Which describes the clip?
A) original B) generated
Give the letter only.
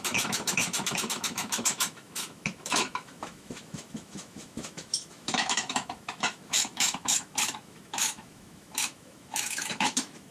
B